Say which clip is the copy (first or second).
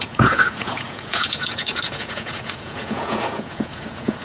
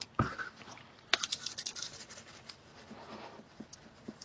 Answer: first